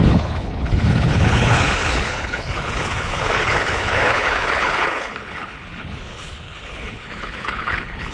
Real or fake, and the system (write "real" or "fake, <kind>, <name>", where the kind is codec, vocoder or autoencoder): fake, codec, HILCodec